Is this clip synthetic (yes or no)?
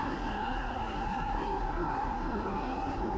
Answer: yes